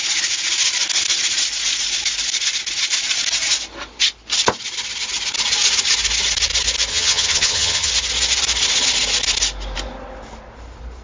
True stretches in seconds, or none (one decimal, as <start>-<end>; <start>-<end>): 0.0-6.9; 7.9-11.0